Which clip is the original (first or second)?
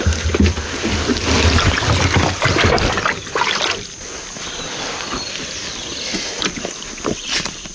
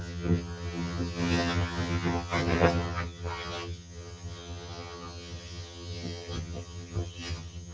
first